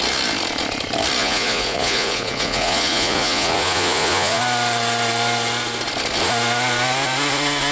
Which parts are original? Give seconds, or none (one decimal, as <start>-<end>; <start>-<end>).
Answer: 0.0-1.2; 4.4-7.7